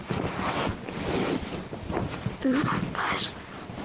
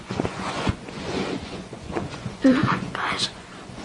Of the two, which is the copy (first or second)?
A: second